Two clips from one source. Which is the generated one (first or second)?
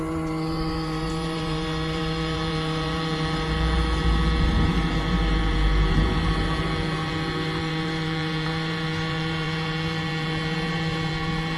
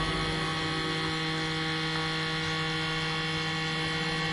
first